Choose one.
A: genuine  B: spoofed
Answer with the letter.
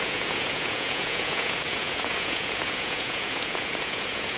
B